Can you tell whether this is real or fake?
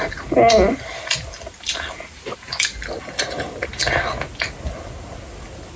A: real